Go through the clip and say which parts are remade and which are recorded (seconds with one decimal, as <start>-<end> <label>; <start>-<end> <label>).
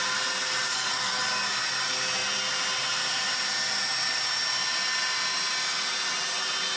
0.0-0.6 recorded; 0.6-1.2 remade; 1.2-6.8 recorded